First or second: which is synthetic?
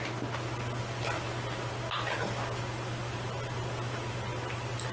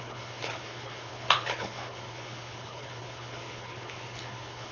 second